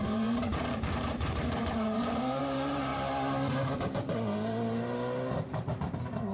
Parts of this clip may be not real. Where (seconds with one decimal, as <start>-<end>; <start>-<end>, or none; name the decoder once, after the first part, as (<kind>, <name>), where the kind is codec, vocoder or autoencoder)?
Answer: 0.0-2.9 (vocoder, BigVGAN v2)